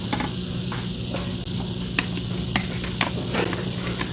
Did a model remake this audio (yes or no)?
no